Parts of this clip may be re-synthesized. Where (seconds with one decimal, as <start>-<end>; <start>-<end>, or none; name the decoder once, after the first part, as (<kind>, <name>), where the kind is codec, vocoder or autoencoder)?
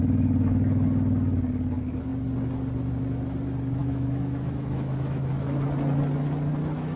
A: 3.8-5.3 (autoencoder, DAC-VAE)